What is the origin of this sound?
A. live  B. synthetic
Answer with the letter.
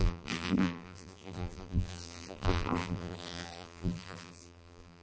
B